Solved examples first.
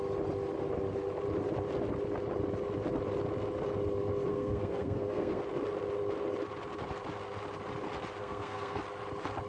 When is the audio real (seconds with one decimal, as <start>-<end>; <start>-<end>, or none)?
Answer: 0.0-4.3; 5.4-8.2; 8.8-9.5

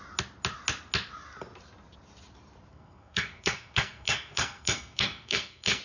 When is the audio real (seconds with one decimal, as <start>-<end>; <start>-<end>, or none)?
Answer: 0.0-2.7

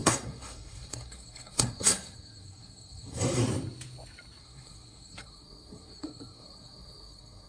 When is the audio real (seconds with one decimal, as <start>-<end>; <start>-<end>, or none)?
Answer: 3.4-4.4